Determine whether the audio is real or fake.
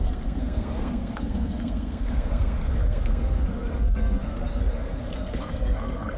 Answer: fake